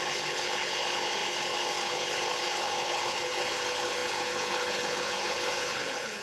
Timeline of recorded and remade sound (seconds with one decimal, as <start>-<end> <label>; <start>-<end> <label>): 0.0-6.2 remade